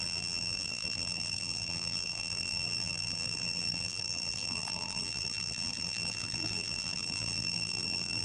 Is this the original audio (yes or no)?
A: no